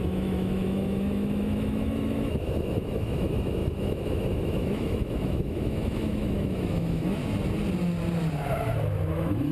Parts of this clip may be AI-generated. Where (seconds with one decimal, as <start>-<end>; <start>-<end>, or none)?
0.0-7.2; 9.1-9.5